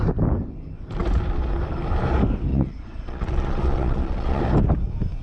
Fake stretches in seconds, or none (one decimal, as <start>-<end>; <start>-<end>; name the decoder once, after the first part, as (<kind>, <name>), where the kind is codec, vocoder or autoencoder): 2.5-4.4 (vocoder, Vocos)